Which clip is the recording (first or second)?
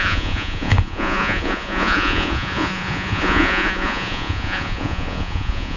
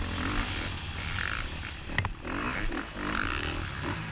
second